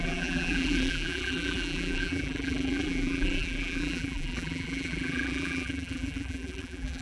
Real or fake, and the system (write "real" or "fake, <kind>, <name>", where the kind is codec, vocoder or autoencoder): fake, vocoder, BigVGAN v2